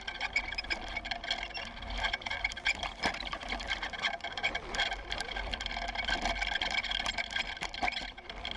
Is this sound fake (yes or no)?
yes